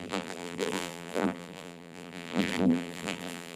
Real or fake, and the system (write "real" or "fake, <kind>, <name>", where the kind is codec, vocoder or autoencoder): fake, vocoder, BigVGAN v2